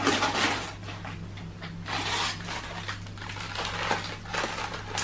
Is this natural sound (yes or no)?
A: yes